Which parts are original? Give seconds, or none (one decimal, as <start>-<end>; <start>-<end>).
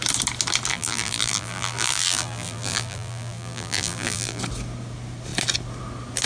0.0-0.7; 4.4-6.2